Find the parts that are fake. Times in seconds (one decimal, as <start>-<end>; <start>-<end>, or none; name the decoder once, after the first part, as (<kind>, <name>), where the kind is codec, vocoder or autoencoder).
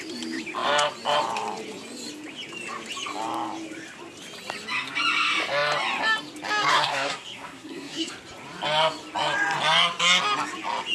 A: 6.7-8.1 (codec, SNAC)